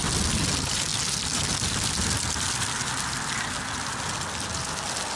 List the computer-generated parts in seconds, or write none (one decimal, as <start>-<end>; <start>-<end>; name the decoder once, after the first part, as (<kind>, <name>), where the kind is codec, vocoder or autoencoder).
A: none